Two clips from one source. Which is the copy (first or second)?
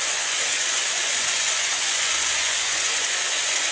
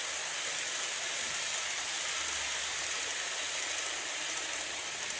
first